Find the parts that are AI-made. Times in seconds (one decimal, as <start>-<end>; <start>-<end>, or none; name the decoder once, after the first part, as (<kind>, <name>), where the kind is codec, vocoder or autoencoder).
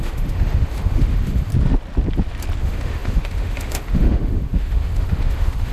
0.0-1.5 (autoencoder, DAC-VAE); 2.6-5.7